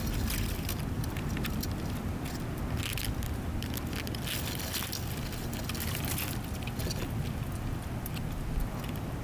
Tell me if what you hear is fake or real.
real